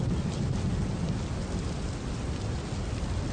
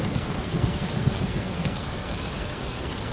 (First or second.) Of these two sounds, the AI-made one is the second